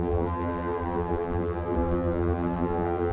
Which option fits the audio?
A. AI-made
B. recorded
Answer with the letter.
A